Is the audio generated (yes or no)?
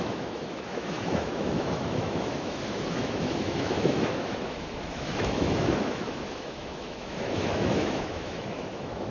yes